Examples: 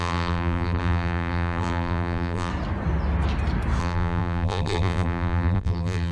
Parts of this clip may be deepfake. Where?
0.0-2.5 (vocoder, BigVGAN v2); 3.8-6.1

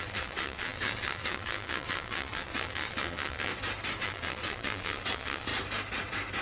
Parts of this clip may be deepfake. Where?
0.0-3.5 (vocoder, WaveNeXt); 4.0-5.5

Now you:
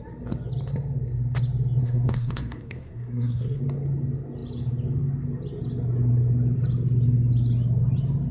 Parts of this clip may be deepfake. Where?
1.8-3.6 (codec, SNAC)